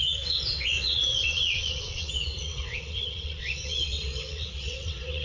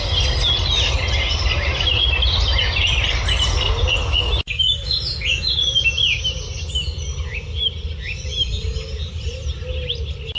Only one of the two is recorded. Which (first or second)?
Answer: second